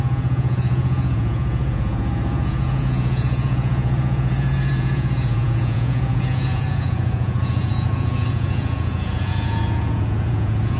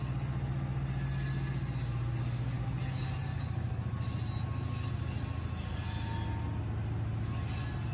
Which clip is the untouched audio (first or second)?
second